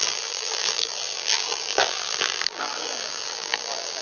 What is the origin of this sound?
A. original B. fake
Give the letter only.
B